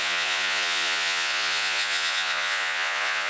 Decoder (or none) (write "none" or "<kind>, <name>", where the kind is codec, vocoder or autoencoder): vocoder, Vocos